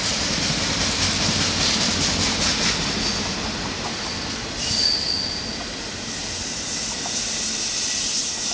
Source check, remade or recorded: recorded